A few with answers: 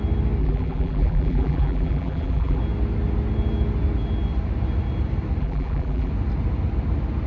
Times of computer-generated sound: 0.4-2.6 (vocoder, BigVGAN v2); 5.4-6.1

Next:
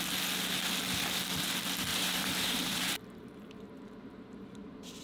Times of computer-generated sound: 1.9-5.0 (vocoder, BigVGAN v2)

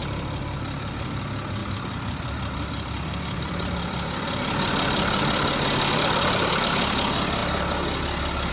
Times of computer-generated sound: 0.0-1.2 (vocoder, BigVGAN v2); 1.6-6.5

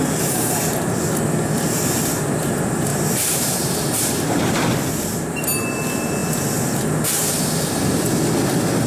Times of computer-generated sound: 2.9-4.7 (vocoder, BigVGAN v2)